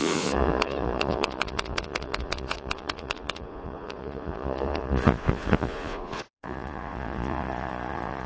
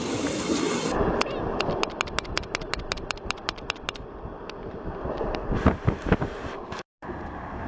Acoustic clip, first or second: second